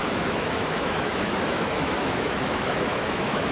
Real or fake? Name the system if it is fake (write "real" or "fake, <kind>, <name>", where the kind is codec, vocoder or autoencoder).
fake, autoencoder, DAC-VAE